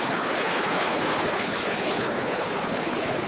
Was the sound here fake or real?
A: fake